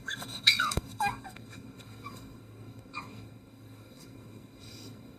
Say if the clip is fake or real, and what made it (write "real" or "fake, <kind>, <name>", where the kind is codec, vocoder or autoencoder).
fake, codec, SNAC